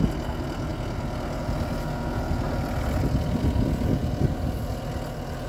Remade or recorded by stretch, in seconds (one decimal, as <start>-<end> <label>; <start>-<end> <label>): 0.0-5.5 recorded